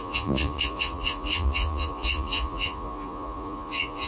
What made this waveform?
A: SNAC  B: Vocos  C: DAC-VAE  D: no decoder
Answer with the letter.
B